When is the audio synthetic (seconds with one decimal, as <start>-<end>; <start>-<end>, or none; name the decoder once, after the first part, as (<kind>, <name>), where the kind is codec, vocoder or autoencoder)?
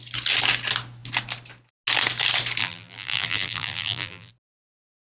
2.6-4.3 (vocoder, BigVGAN v2)